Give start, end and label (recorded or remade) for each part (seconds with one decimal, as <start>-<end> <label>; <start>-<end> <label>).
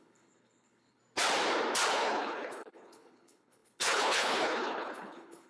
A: 0.0-1.0 remade; 1.0-1.9 recorded; 1.9-5.5 remade